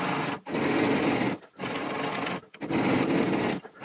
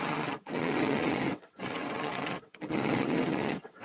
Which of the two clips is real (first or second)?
first